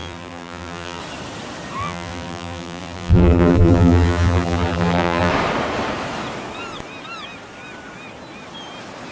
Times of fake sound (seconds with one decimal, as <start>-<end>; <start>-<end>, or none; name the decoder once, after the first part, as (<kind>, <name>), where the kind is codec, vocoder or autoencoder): 0.0-1.0 (vocoder, BigVGAN v2); 1.8-5.3